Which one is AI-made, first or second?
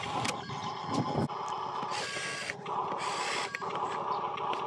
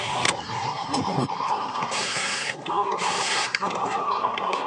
second